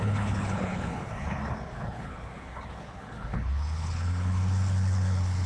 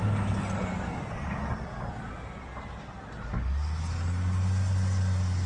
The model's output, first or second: first